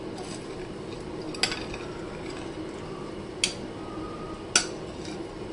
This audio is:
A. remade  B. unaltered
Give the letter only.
B